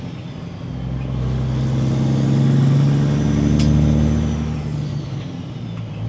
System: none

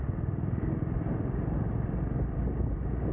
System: none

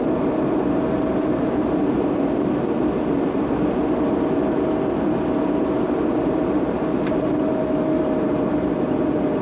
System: none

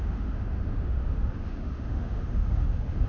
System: autoencoder, DAC-VAE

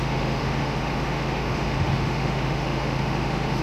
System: autoencoder, DAC-VAE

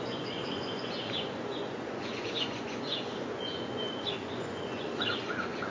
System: vocoder, Vocos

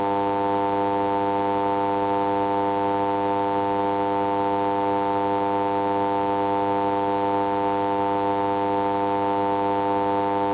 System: none